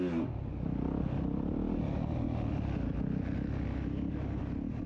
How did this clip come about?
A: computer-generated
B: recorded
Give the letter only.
B